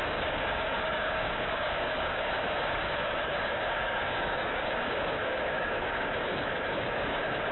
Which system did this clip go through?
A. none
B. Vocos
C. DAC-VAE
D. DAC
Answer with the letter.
D